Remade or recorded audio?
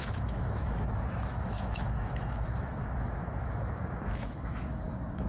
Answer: remade